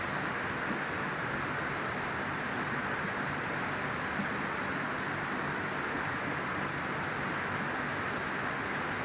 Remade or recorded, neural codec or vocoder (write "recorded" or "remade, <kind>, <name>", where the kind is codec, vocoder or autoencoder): recorded